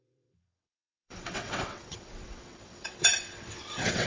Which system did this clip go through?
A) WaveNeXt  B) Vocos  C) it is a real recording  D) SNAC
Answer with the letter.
A